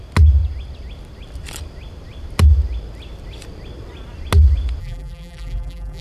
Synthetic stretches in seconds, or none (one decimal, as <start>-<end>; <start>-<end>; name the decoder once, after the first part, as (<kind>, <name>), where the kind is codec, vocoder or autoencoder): 4.8-6.0 (vocoder, BigVGAN v2)